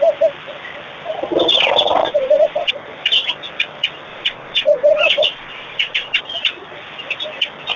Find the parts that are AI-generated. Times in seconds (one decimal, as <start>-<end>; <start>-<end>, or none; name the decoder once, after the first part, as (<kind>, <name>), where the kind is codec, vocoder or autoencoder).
2.0-2.7 (vocoder, Vocos); 4.1-6.2